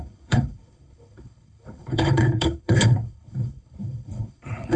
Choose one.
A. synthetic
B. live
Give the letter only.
A